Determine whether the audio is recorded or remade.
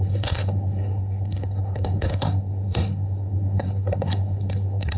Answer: remade